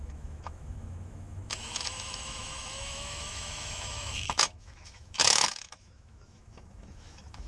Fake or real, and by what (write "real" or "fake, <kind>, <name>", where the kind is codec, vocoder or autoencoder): fake, autoencoder, DAC-VAE